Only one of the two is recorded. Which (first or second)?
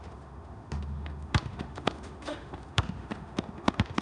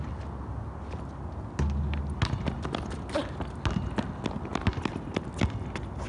second